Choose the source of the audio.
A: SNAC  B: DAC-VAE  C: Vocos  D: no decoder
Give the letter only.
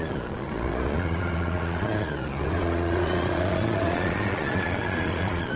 C